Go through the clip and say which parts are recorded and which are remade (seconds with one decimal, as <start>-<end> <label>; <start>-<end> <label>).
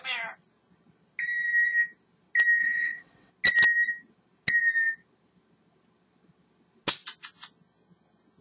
0.0-2.6 recorded; 2.6-3.3 remade; 3.3-8.4 recorded